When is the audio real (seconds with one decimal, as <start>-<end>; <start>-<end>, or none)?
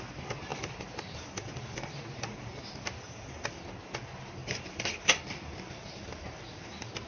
none